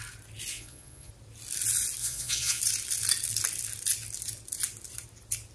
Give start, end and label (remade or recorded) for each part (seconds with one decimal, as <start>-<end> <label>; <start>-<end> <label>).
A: 0.0-0.5 recorded; 0.5-1.1 remade; 1.1-2.0 recorded; 2.0-2.6 remade; 2.6-5.5 recorded